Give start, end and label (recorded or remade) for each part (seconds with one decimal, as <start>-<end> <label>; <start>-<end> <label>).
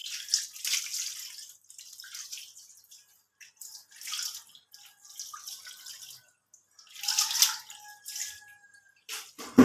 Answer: 0.0-9.6 recorded